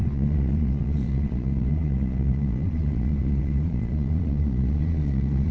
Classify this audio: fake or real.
fake